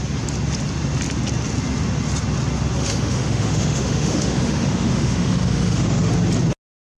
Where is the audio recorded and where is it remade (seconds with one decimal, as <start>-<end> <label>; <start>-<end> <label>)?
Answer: 0.0-2.8 recorded; 2.8-6.1 remade; 6.1-7.0 recorded